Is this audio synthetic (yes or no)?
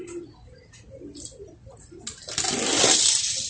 no